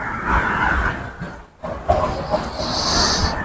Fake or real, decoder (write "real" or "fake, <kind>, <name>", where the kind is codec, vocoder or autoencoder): real